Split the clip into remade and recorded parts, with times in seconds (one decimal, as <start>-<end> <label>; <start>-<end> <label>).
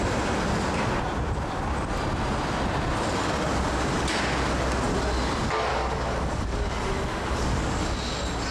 0.0-5.7 recorded; 5.7-7.8 remade; 7.8-8.5 recorded